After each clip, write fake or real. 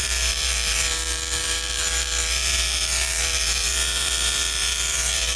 fake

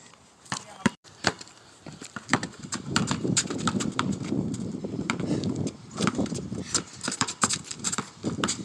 fake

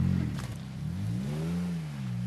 real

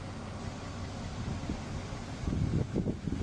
real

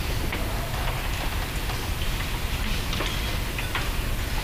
real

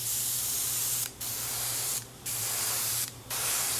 fake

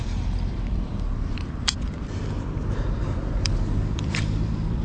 fake